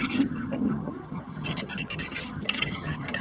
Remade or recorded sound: remade